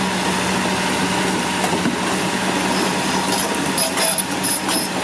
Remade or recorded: recorded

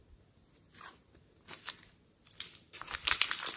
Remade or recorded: recorded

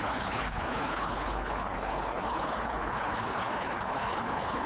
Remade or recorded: remade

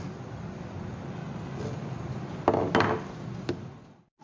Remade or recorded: recorded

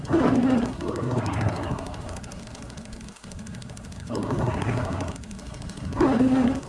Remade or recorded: remade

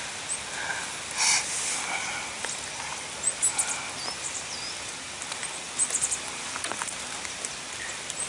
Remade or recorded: recorded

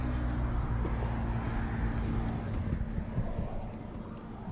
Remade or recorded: recorded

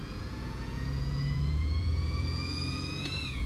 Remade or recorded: remade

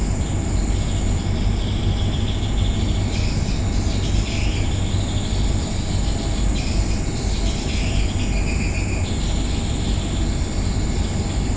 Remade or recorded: recorded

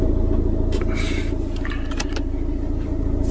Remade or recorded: remade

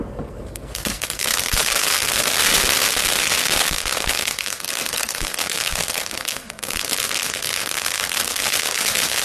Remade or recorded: remade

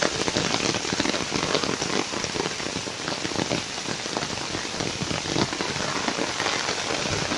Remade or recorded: recorded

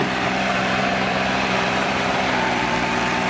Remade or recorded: remade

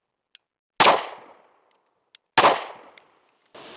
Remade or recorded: recorded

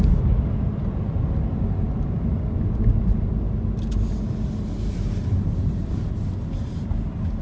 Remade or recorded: recorded